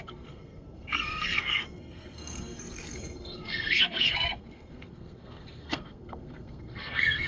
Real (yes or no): no